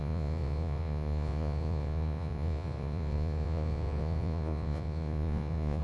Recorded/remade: remade